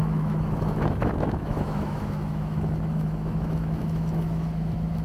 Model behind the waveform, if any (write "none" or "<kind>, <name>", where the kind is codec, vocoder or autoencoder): autoencoder, DAC-VAE